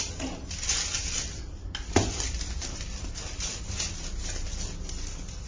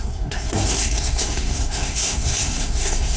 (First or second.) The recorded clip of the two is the first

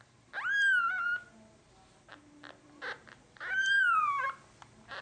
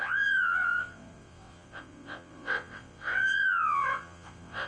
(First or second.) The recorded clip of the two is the first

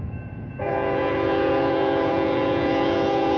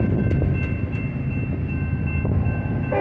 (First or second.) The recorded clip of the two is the second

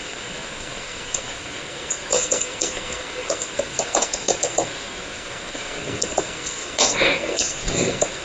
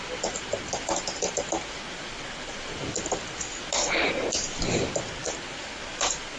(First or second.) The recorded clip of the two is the second